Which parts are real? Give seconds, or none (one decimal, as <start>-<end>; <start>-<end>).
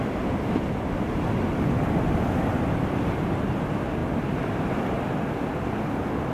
0.0-6.3